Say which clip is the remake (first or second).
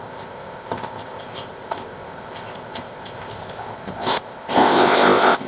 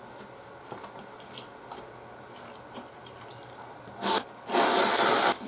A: first